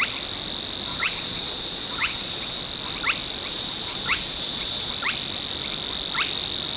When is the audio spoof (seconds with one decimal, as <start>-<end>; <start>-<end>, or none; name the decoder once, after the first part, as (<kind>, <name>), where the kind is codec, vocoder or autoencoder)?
0.9-2.6 (vocoder, Vocos); 3.5-4.9